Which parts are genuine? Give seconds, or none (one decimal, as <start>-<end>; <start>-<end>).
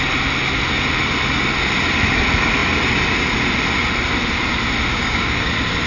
0.0-4.9; 5.5-5.9